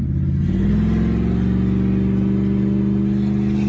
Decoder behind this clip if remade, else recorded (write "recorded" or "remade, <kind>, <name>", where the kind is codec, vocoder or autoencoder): recorded